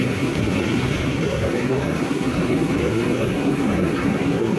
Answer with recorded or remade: remade